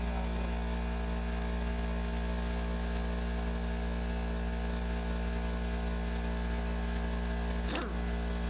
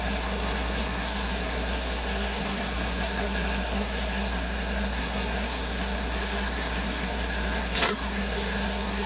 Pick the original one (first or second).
first